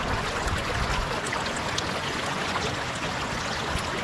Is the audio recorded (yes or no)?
no